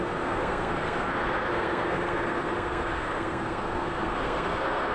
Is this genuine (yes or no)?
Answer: no